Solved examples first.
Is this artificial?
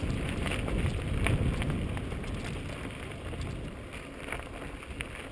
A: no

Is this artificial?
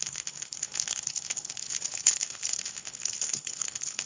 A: yes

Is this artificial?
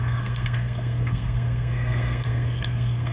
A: yes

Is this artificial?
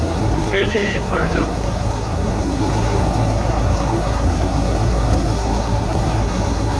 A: yes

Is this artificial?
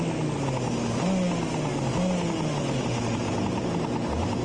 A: no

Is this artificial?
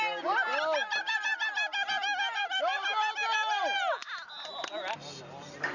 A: no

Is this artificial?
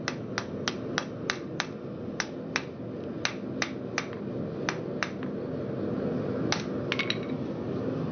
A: no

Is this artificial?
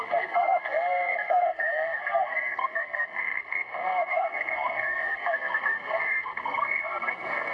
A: yes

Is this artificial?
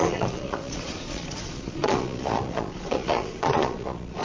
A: yes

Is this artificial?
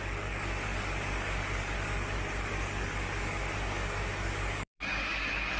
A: yes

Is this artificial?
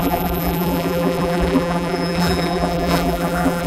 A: yes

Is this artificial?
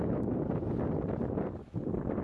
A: no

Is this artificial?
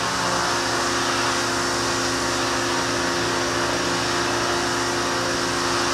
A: no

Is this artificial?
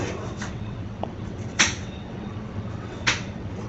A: yes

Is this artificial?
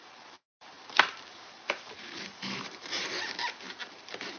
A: yes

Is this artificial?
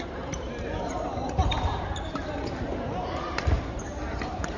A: yes